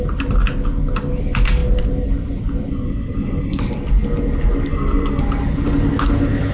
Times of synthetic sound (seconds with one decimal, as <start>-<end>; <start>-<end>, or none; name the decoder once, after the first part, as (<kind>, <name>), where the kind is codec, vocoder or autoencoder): 2.7-3.6 (codec, SNAC); 4.7-5.2